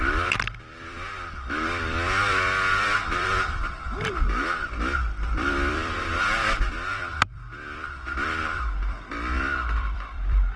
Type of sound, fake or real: fake